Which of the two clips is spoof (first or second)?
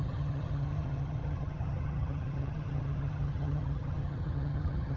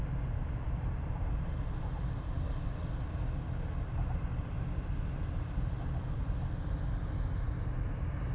first